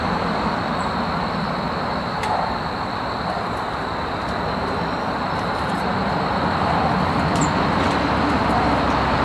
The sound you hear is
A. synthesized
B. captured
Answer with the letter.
A